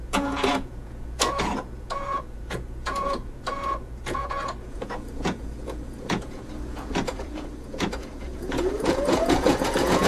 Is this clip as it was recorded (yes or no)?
no